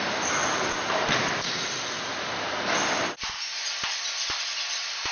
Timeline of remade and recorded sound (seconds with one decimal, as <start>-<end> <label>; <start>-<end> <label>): 0.0-0.4 recorded; 0.4-2.3 remade; 2.3-5.1 recorded